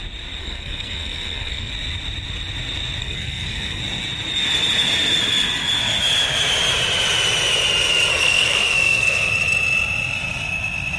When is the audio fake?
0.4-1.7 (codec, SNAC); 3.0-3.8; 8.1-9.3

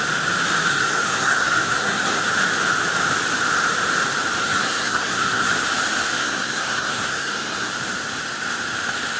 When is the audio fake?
0.7-2.2 (codec, SNAC); 4.4-5.5; 6.2-7.7

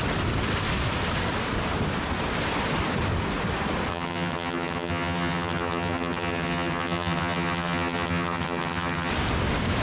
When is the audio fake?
3.9-9.1 (vocoder, HiFi-GAN)

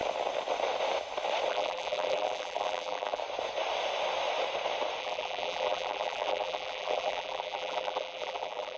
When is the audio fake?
1.5-3.2 (vocoder, BigVGAN v2); 5.0-8.8

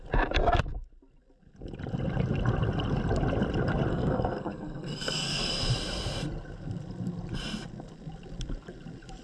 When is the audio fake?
3.9-5.5 (codec, SNAC)

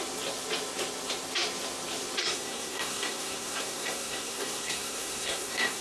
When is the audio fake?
2.2-5.8 (codec, SNAC)

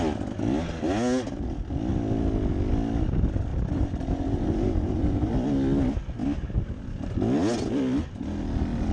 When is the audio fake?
3.5-5.3 (vocoder, BigVGAN v2)

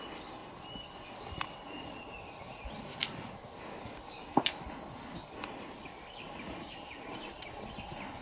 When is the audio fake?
none